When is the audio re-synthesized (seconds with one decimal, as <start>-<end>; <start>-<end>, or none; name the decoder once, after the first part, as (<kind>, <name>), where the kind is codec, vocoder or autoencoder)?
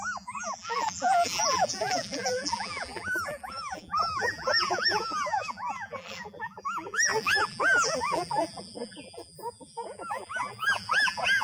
0.0-11.4 (vocoder, BigVGAN v2)